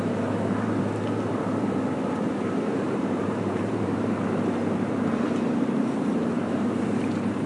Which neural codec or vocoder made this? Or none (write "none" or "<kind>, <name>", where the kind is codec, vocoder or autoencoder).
vocoder, BigVGAN v2